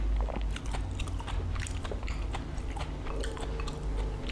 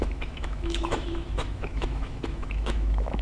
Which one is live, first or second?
first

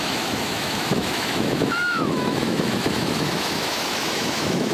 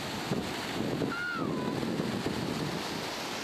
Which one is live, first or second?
second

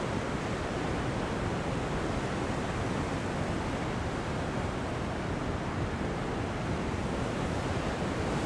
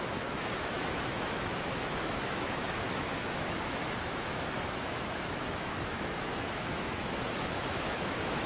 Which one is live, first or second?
first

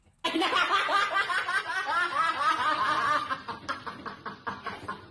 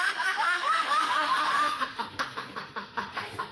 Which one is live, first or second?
first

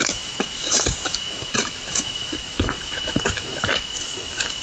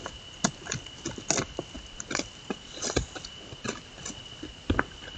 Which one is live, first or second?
second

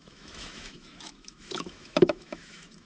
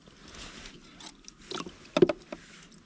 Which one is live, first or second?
second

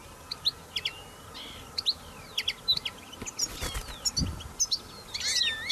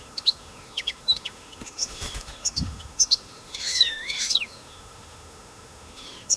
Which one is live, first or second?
first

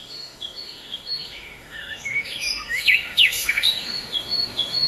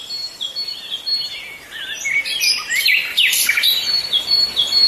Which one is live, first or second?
second